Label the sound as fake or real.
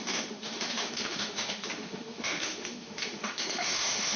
fake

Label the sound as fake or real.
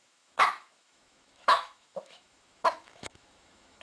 fake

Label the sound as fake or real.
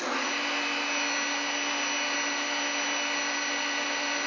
real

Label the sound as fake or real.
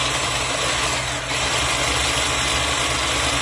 real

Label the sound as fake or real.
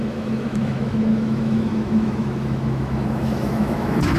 fake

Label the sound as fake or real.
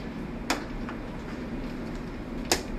real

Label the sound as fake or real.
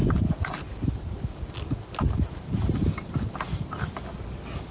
real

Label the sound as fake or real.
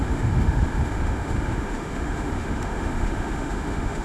fake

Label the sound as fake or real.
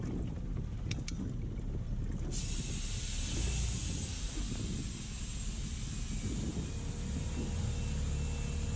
real